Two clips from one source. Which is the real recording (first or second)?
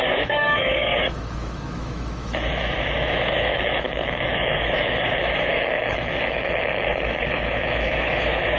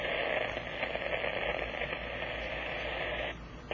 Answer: second